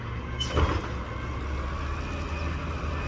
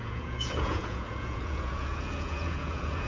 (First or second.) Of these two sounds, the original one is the first